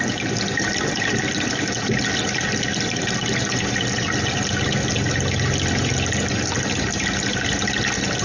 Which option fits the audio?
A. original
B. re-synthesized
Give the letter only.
A